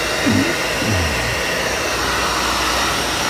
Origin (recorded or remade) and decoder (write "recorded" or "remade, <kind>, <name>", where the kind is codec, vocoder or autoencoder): recorded